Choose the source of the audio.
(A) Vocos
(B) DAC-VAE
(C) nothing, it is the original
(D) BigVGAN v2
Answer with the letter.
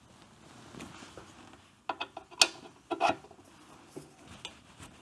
C